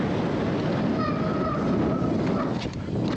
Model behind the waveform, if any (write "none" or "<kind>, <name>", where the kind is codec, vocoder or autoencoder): none